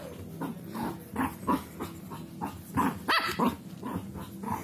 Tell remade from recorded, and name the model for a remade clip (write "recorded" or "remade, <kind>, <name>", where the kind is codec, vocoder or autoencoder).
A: recorded